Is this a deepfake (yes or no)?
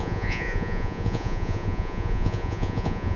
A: yes